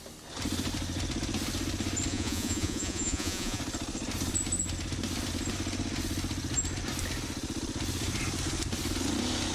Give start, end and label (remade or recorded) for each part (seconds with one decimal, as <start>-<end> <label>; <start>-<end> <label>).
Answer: 0.0-2.1 recorded; 2.1-3.6 remade; 3.6-9.5 recorded